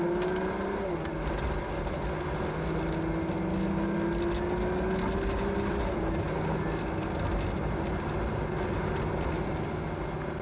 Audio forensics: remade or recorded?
recorded